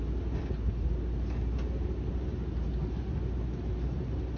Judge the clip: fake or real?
real